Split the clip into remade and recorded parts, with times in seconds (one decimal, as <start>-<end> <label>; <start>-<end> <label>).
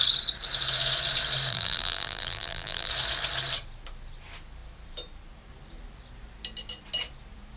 0.0-1.5 recorded; 1.5-2.9 remade; 2.9-7.6 recorded